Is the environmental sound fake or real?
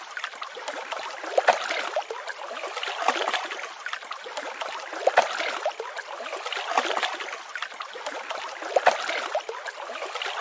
real